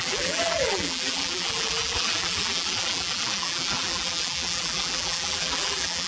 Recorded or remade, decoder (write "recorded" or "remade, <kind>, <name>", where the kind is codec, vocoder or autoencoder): remade, vocoder, BigVGAN v2